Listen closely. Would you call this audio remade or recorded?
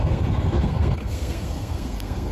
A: remade